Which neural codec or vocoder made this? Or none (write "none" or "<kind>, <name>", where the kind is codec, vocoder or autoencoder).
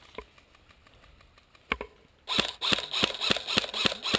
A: none